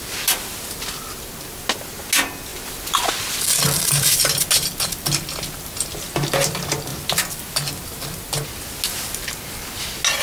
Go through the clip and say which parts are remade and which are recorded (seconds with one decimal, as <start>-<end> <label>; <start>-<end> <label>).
0.0-10.2 recorded